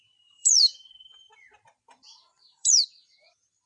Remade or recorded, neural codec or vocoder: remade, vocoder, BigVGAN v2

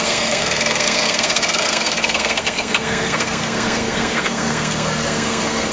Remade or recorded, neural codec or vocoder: remade, codec, SNAC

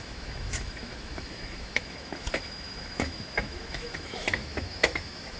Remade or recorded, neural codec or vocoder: remade, autoencoder, DAC-VAE